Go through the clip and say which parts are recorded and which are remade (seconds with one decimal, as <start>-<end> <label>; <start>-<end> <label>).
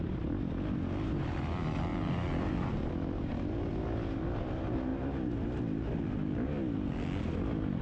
0.0-1.9 recorded; 1.9-2.5 remade; 2.5-7.8 recorded